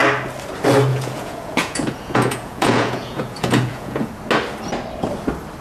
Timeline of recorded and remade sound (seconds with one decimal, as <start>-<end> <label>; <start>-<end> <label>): 0.0-0.9 recorded; 0.9-4.1 remade; 4.1-5.6 recorded